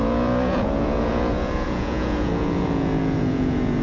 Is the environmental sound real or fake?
fake